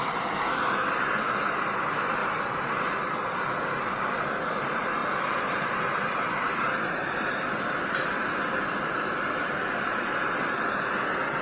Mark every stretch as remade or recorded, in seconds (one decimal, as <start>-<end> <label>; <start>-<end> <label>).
0.0-2.2 recorded; 2.2-3.0 remade; 3.0-5.0 recorded; 5.0-9.5 remade; 9.5-11.4 recorded